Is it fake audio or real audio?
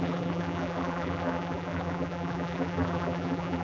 fake